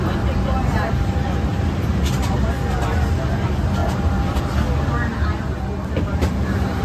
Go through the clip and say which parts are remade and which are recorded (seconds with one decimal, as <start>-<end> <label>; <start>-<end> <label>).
0.0-1.5 recorded; 1.5-2.5 remade; 2.5-3.8 recorded; 3.8-4.4 remade; 4.4-6.8 recorded